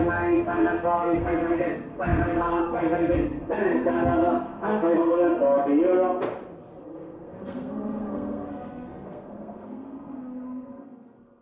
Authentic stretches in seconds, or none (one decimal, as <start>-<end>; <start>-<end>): 5.4-6.8